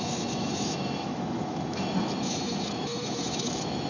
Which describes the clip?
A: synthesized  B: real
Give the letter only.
A